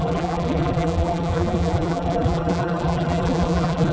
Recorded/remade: remade